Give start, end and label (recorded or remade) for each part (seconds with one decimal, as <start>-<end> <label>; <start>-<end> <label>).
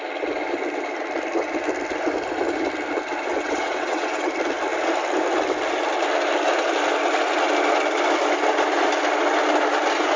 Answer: 0.0-3.3 recorded; 3.3-4.3 remade; 4.3-10.2 recorded